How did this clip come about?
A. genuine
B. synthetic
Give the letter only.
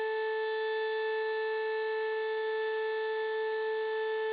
A